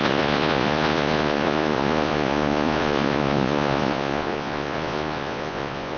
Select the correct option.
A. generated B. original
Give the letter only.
A